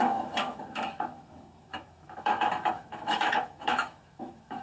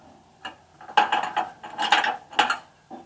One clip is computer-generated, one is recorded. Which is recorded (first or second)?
second